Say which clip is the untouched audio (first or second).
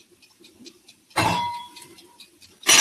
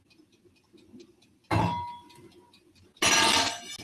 second